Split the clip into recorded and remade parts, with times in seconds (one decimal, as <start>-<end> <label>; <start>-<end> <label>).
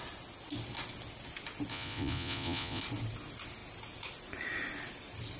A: 0.0-1.7 recorded; 1.7-2.8 remade; 2.8-5.4 recorded